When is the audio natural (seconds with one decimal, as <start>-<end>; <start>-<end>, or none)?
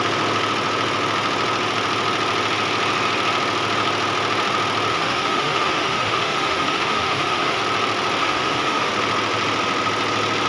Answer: 0.0-4.9; 7.6-8.2; 8.9-10.5